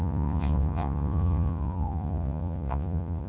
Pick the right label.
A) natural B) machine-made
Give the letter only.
B